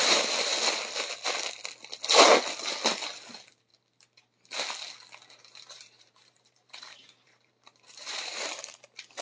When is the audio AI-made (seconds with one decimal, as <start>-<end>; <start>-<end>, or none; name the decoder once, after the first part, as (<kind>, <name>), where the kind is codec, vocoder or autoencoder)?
0.0-0.5 (vocoder, BigVGAN v2); 3.3-3.7; 5.4-9.2